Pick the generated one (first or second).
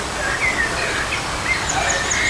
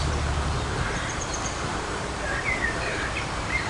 second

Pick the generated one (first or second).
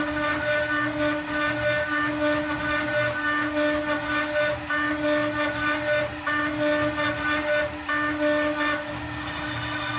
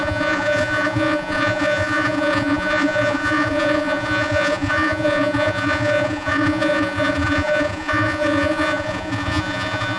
second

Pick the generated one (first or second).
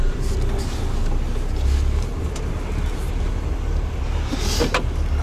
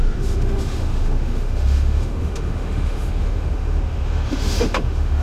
second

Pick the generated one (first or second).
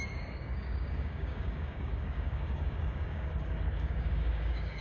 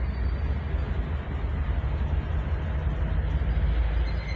first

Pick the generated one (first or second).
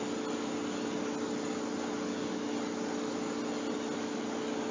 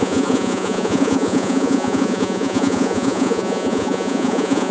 second